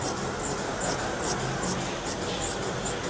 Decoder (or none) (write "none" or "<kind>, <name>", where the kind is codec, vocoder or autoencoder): none